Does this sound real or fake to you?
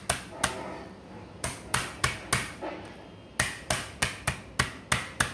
real